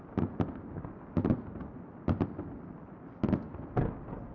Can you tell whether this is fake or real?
real